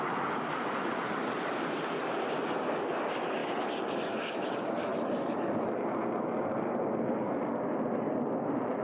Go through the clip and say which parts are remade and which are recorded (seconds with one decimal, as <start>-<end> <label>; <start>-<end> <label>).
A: 0.0-3.4 remade; 3.4-4.2 recorded; 4.2-8.8 remade